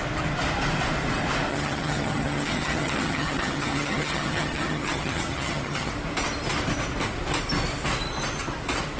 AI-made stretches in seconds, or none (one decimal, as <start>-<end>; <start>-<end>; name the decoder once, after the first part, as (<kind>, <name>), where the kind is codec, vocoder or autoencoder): 1.5-5.9 (vocoder, HiFi-GAN)